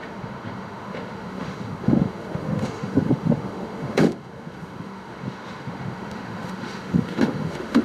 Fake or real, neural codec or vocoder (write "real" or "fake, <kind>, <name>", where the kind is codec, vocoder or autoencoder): fake, autoencoder, DAC-VAE